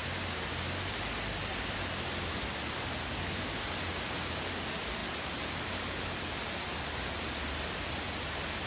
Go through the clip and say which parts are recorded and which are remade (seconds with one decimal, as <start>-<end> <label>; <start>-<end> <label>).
0.0-5.0 recorded; 5.0-7.1 remade; 7.1-8.7 recorded